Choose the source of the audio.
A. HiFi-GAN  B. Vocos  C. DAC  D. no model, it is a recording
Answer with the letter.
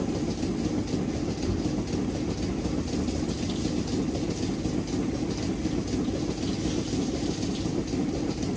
D